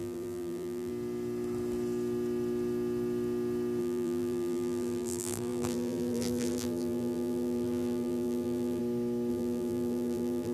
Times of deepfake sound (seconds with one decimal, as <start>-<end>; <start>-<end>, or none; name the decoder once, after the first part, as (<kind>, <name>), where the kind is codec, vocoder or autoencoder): 0.0-0.9 (vocoder, BigVGAN v2); 3.8-8.8; 9.3-10.5